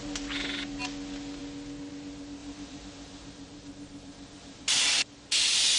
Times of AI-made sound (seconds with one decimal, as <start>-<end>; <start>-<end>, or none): 2.4-4.8